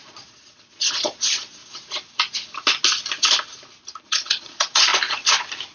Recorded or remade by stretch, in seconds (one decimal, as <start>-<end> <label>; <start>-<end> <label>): 0.0-1.6 remade; 1.6-4.0 recorded; 4.0-4.9 remade; 4.9-5.7 recorded